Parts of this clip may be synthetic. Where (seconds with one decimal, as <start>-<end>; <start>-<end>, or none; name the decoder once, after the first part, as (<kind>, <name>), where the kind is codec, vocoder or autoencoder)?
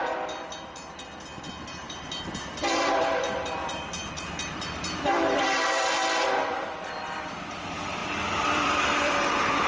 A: 1.8-9.7 (vocoder, BigVGAN v2)